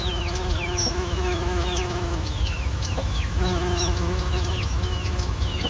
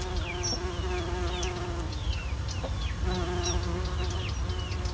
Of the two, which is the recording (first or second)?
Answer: second